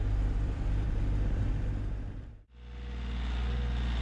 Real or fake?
fake